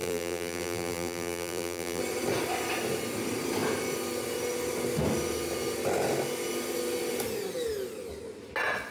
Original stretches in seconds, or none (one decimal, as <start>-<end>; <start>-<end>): 2.0-8.9